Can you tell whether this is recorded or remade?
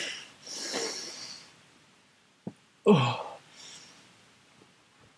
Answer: recorded